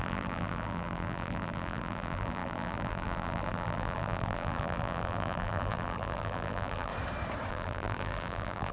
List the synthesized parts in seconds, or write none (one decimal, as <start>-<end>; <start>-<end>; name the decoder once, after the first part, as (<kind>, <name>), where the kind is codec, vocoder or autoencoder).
0.0-6.9 (vocoder, BigVGAN v2); 7.5-8.7